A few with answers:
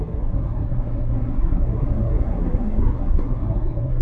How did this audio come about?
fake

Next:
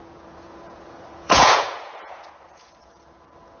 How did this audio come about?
fake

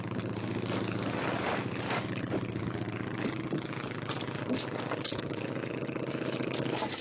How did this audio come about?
real